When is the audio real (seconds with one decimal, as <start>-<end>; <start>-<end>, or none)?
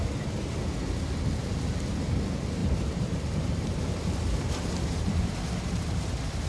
0.0-2.6; 6.1-6.5